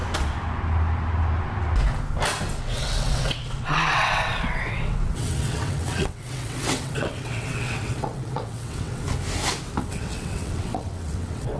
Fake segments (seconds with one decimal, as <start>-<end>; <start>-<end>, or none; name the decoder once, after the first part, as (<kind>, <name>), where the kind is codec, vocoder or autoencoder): 2.6-9.0 (vocoder, WaveNeXt); 9.8-11.6